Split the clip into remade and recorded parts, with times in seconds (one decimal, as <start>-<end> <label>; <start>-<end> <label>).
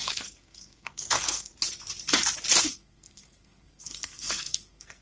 0.0-1.5 remade; 1.5-2.6 recorded; 2.6-5.0 remade